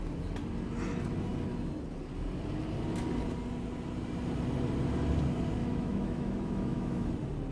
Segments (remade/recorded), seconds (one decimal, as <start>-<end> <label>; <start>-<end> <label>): 0.0-5.6 recorded; 5.6-7.1 remade; 7.1-7.5 recorded